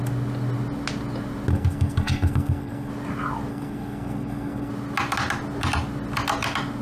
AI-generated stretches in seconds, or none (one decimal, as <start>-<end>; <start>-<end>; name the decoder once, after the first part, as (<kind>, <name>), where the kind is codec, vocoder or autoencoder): 1.5-2.9 (codec, SNAC); 3.5-4.7